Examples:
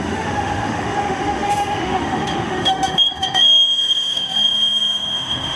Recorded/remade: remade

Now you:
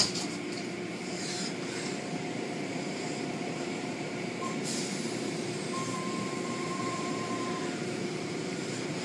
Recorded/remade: remade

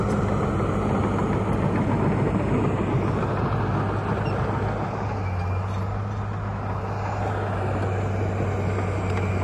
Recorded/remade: recorded